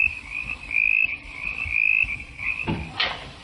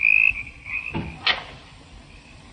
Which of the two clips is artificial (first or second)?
first